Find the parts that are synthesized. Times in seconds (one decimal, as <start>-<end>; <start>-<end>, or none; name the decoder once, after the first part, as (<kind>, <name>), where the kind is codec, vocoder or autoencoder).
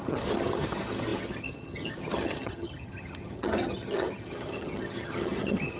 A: 0.0-5.8 (vocoder, HiFi-GAN)